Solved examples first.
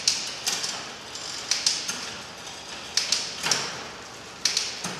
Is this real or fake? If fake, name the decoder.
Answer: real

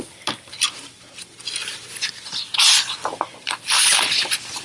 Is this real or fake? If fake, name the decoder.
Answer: real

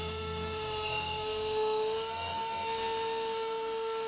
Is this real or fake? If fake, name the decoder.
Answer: fake, autoencoder, DAC-VAE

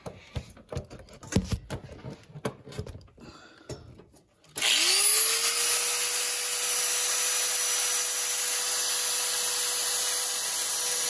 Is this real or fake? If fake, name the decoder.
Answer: real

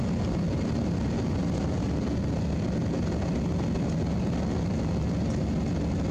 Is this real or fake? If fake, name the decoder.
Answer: real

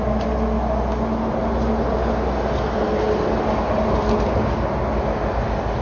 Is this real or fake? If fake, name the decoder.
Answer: real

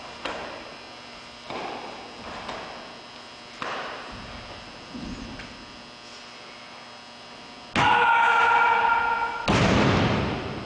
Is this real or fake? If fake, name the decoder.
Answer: real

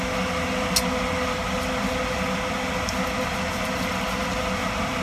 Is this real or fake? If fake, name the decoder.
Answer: real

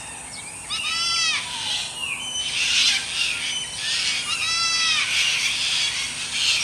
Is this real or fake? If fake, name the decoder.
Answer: real